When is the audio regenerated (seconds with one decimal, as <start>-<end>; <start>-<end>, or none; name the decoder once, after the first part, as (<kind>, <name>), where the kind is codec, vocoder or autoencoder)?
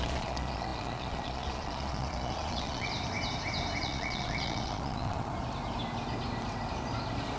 0.0-2.9 (vocoder, Vocos); 3.8-5.3